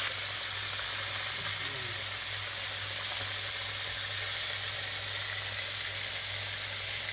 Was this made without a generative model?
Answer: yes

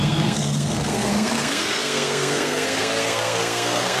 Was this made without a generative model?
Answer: no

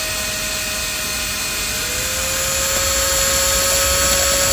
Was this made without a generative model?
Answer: yes